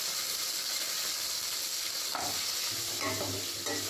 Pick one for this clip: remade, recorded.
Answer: recorded